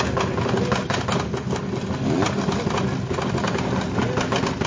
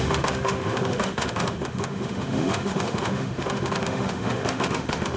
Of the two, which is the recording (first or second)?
first